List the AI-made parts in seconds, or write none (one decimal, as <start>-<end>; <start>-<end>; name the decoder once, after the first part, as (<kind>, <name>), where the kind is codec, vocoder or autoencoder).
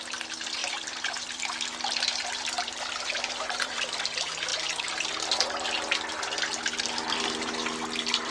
0.6-4.0 (vocoder, BigVGAN v2)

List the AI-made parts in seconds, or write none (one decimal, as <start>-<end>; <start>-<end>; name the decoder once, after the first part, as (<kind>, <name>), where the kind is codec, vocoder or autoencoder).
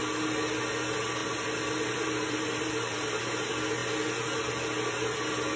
1.2-3.2 (vocoder, BigVGAN v2)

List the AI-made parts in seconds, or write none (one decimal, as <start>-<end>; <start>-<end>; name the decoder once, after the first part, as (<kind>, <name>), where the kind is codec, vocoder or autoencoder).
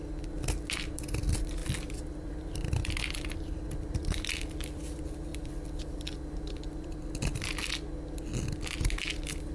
1.6-4.8 (vocoder, BigVGAN v2); 5.3-7.1